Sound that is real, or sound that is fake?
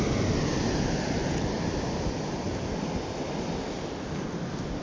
real